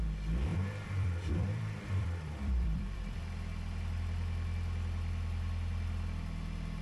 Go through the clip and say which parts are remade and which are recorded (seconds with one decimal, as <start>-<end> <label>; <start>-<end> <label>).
0.0-0.5 recorded; 0.5-3.2 remade; 3.2-6.8 recorded